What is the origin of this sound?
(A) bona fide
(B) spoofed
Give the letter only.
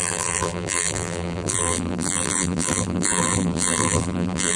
B